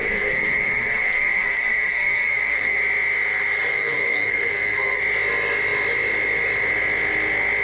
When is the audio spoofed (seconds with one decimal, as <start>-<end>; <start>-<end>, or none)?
0.0-2.8; 3.7-5.0